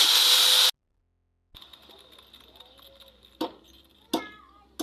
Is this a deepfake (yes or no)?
no